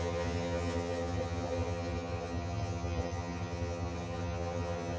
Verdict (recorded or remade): remade